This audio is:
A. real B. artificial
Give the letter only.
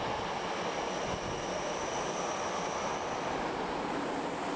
A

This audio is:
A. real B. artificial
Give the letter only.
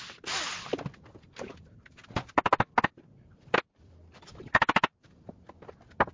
A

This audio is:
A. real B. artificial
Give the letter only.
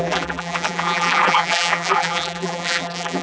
B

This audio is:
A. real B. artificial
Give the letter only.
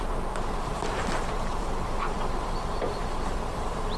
B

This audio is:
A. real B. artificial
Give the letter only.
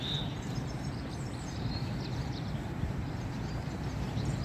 B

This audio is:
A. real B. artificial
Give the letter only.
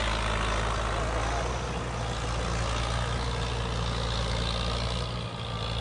A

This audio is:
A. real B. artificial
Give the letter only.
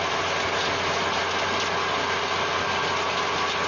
A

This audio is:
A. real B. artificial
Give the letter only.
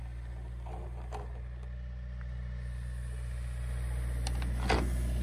A